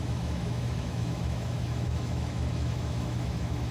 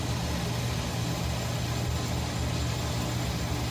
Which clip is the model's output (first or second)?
first